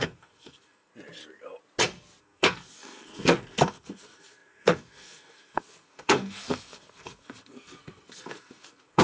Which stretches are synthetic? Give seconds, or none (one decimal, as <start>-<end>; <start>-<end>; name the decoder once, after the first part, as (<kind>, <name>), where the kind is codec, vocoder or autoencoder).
0.0-0.9 (codec, SNAC); 2.2-9.0